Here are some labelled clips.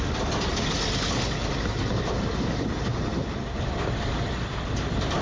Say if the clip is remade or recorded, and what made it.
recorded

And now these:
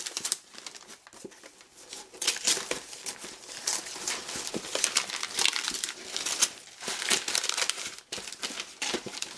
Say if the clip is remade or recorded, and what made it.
remade, vocoder, BigVGAN v2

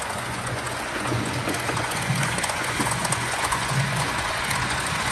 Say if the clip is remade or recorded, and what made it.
remade, vocoder, Vocos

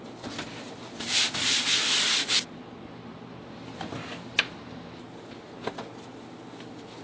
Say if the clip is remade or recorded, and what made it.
recorded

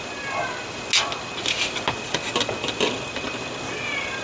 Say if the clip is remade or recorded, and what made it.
recorded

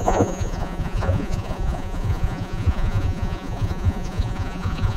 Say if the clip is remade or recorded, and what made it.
remade, vocoder, Vocos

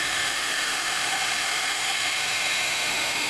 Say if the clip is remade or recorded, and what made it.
remade, autoencoder, DAC-VAE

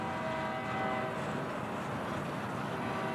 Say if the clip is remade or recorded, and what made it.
recorded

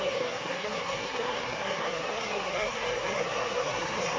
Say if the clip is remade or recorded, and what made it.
remade, codec, SNAC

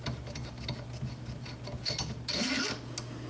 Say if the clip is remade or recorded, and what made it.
recorded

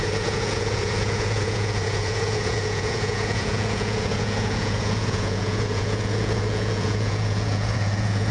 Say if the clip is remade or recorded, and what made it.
remade, vocoder, Vocos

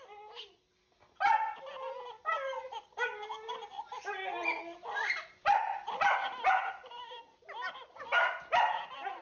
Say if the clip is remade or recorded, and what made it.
recorded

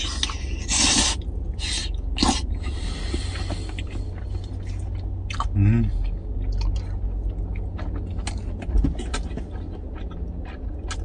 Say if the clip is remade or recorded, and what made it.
recorded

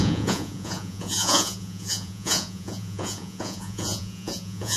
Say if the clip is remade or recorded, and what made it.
remade, vocoder, Vocos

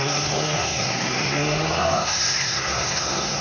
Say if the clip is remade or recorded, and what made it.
remade, codec, SNAC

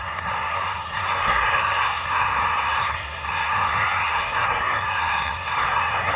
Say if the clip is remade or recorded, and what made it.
remade, codec, SNAC